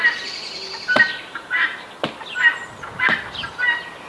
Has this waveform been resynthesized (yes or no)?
no